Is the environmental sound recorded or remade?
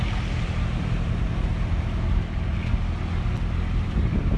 recorded